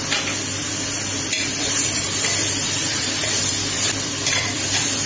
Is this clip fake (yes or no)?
yes